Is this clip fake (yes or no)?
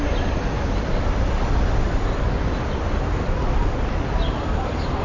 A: no